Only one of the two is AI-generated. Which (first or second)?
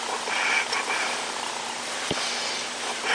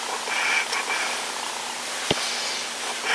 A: first